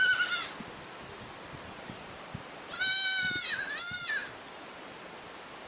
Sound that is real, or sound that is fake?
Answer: real